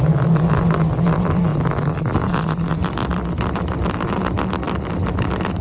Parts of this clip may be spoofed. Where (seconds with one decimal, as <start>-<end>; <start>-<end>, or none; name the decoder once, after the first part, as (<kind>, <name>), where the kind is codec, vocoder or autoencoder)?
none